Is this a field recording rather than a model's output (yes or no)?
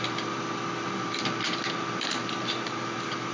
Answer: yes